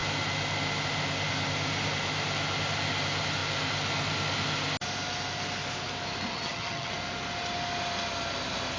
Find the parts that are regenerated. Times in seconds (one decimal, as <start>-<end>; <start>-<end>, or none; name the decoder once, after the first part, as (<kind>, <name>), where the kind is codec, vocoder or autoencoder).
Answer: 6.3-6.9 (vocoder, HiFi-GAN)